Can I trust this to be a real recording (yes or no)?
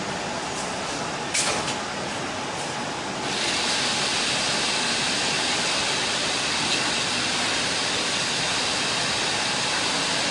yes